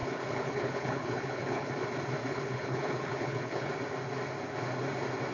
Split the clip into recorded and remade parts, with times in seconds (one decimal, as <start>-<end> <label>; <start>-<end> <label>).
0.0-1.7 remade; 1.7-2.2 recorded; 2.2-3.7 remade; 3.7-5.3 recorded